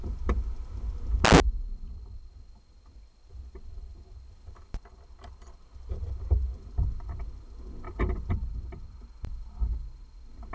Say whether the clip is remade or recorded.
recorded